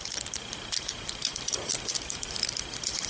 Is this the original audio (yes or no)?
no